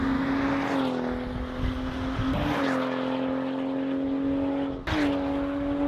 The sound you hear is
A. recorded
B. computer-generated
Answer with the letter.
A